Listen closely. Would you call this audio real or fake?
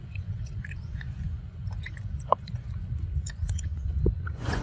fake